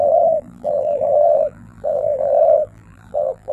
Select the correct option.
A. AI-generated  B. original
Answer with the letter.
A